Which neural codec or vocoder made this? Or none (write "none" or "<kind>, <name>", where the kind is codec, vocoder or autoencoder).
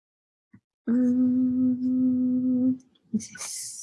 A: none